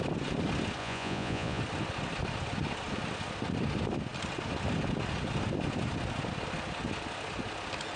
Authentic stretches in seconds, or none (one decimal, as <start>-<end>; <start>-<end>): 0.0-0.8; 1.6-8.0